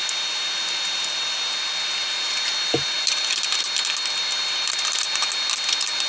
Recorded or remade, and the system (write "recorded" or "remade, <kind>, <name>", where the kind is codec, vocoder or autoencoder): recorded